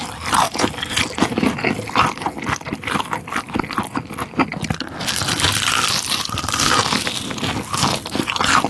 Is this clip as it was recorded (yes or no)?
yes